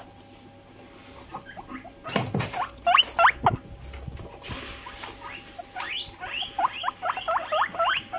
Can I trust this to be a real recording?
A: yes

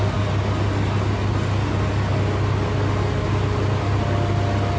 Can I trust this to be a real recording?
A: yes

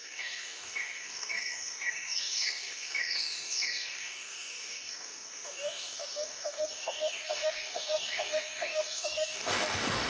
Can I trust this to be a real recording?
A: no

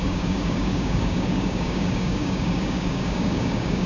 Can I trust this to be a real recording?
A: no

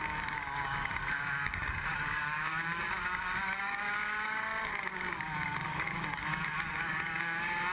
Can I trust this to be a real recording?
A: no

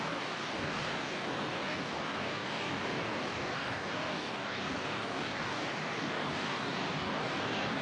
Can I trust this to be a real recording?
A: no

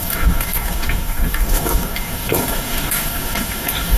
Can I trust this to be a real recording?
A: no